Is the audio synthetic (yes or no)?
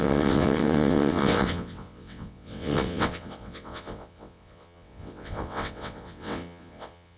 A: yes